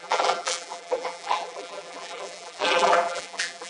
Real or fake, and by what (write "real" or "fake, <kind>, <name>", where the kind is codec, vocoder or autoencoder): fake, vocoder, BigVGAN v2